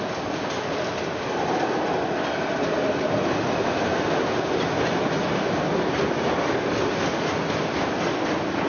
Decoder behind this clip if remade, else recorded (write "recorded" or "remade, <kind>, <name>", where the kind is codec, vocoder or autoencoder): recorded